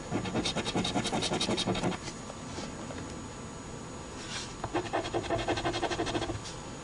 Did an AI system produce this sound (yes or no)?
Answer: no